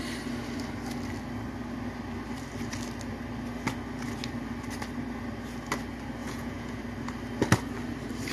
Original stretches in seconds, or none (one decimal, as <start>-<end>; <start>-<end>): 0.0-6.2; 6.8-8.3